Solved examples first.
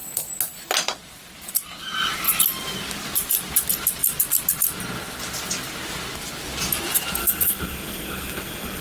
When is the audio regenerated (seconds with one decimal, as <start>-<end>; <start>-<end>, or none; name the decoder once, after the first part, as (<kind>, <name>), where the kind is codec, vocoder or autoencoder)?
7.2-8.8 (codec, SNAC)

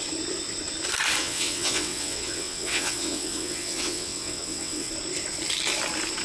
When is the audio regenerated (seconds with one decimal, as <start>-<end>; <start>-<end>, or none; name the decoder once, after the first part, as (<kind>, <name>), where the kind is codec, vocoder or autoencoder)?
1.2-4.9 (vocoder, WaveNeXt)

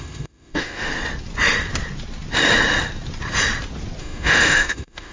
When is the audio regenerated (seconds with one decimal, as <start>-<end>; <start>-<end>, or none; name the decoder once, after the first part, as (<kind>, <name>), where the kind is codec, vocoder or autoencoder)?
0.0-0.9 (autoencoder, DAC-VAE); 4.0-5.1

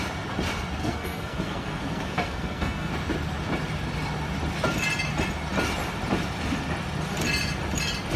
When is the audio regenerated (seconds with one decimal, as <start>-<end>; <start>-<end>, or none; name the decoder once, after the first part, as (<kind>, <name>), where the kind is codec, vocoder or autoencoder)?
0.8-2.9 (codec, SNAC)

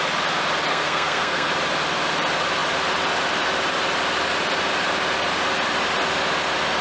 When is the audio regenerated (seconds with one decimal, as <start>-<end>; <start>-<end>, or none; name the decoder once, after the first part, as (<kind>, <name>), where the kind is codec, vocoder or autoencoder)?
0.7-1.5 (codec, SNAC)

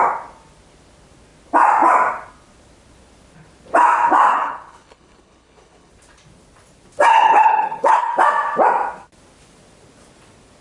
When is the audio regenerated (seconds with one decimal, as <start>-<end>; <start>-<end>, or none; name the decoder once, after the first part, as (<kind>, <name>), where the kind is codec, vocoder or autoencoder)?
4.3-5.9 (codec, HILCodec); 7.1-8.1